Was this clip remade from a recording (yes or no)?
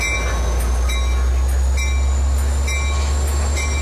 no